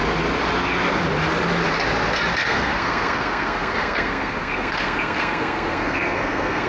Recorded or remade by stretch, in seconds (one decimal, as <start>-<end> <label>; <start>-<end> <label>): 0.0-2.4 recorded; 2.4-6.7 remade